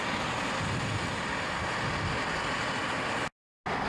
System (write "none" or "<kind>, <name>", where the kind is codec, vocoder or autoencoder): none